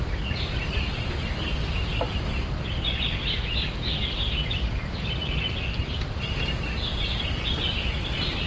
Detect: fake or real real